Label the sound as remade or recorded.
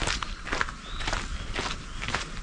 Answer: recorded